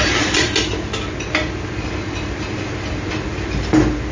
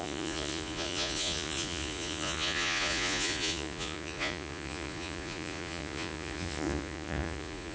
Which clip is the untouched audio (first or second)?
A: first